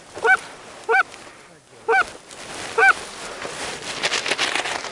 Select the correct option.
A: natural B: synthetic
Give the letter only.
A